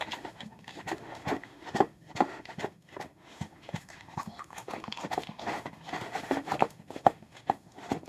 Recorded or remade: remade